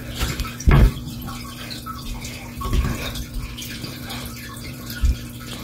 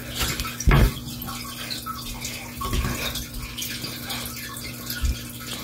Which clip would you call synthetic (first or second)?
first